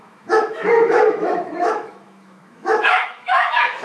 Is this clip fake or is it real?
fake